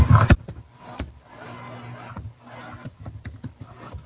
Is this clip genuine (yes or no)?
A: yes